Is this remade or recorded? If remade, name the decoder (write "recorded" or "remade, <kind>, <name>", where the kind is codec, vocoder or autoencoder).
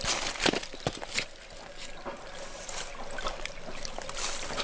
recorded